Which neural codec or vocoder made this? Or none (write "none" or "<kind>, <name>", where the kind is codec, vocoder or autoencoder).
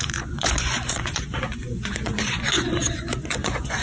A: vocoder, Vocos